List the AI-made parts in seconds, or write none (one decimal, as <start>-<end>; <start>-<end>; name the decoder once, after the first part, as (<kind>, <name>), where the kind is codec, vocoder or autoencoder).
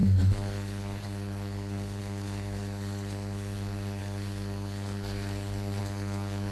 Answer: 0.0-6.5 (codec, SNAC)